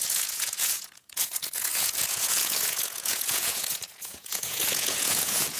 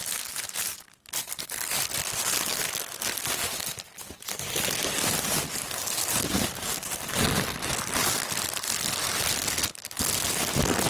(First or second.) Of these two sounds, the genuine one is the second